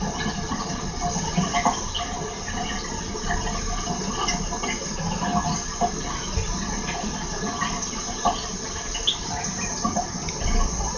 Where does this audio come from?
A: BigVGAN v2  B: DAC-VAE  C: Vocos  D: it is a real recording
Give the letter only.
D